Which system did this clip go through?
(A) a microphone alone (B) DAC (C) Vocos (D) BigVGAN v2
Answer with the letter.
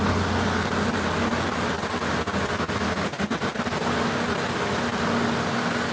A